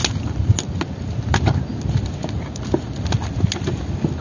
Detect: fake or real real